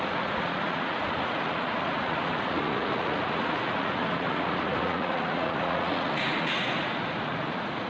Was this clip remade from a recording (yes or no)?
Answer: yes